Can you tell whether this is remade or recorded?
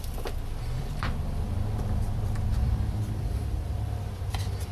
remade